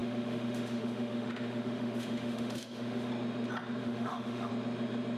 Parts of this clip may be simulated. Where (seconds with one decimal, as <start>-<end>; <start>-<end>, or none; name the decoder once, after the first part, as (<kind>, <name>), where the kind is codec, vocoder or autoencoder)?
0.0-3.1 (autoencoder, DAC-VAE); 3.8-4.5